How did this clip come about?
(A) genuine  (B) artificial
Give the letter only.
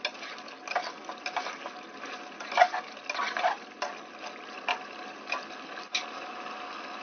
A